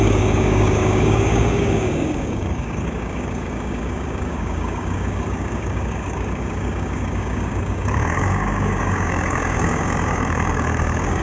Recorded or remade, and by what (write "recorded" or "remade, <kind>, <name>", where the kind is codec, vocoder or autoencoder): remade, codec, DAC